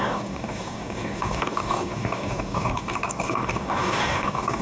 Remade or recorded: remade